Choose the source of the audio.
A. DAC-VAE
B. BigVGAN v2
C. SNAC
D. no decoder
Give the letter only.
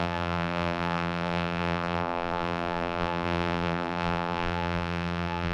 B